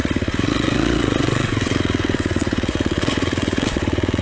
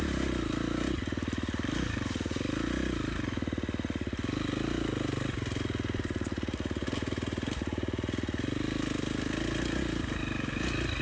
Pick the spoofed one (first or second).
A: first